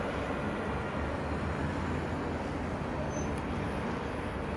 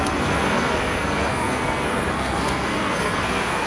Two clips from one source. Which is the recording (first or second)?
first